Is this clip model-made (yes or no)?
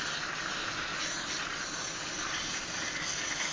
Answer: yes